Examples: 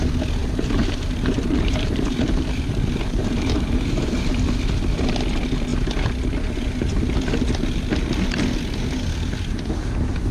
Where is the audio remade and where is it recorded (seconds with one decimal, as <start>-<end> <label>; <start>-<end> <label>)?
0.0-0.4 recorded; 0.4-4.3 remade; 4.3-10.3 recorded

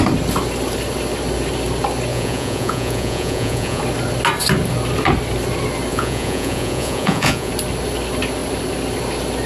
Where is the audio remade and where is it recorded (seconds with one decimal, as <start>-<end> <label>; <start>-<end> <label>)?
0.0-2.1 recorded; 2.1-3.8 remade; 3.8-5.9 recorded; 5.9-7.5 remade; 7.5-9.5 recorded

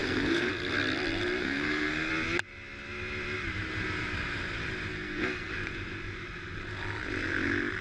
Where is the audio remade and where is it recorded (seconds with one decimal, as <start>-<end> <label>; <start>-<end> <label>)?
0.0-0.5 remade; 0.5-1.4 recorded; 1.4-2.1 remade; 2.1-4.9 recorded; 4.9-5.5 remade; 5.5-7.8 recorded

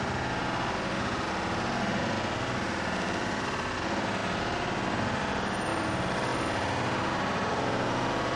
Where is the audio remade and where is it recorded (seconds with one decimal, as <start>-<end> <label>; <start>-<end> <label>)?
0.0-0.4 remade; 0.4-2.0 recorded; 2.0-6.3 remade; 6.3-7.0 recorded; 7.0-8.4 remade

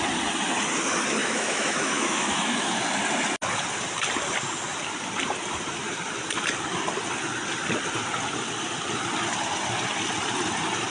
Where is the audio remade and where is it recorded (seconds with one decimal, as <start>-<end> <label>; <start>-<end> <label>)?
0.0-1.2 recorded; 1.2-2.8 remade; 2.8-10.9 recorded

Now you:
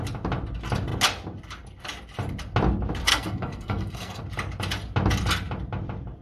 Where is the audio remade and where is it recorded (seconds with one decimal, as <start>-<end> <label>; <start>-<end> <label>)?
0.0-3.1 recorded; 3.1-4.2 remade; 4.2-6.2 recorded